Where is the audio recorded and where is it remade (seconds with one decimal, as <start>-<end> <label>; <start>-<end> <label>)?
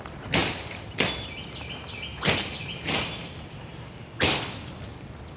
0.0-5.4 recorded